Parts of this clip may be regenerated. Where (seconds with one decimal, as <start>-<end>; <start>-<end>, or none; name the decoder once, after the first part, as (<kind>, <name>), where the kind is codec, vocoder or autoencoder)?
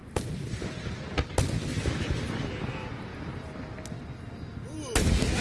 0.0-0.9 (vocoder, BigVGAN v2); 1.7-2.5